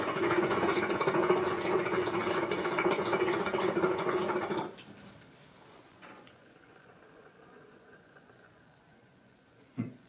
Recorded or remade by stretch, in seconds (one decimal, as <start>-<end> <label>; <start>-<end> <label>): 0.0-4.2 remade; 4.2-5.7 recorded; 5.7-10.1 remade

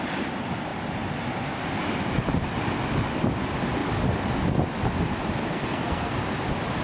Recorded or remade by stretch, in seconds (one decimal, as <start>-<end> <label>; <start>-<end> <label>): 0.0-5.5 recorded; 5.5-6.2 remade; 6.2-6.8 recorded

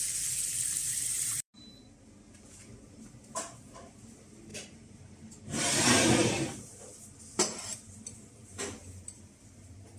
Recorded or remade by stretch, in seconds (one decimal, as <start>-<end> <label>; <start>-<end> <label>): 0.0-0.8 recorded; 0.8-1.6 remade; 1.6-4.5 recorded; 4.5-6.8 remade; 6.8-10.0 recorded